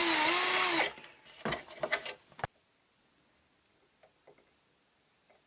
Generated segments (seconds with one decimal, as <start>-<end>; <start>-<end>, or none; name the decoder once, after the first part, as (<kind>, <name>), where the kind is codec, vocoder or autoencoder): none